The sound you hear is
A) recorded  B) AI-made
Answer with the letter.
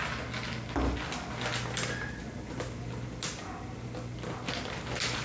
A